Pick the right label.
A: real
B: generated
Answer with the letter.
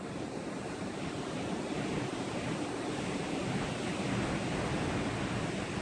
A